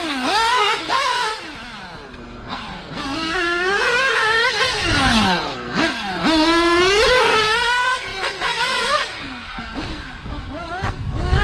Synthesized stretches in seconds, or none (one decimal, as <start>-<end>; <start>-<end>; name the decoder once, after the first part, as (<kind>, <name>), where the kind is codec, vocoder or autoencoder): 0.0-1.3 (codec, SNAC); 2.1-6.2; 7.1-11.4